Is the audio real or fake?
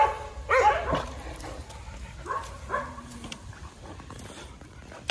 real